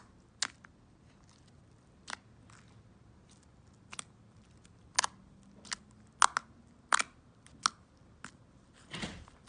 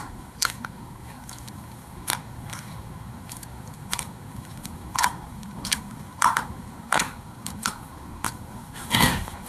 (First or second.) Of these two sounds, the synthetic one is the second